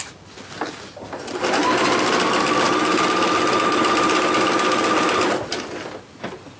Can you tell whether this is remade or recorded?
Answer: recorded